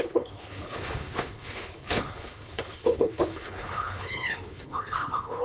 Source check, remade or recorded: remade